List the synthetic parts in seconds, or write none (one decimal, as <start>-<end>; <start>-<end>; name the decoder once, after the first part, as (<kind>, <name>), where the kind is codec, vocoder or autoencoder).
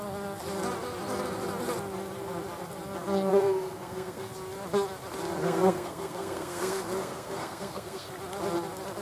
3.3-4.3 (codec, SNAC); 5.4-8.1